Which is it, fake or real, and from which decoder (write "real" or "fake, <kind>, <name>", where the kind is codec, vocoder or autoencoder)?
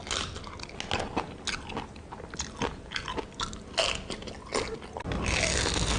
real